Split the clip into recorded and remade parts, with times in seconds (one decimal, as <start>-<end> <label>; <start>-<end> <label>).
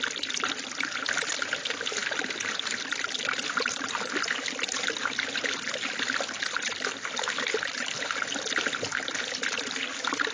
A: 0.0-10.3 recorded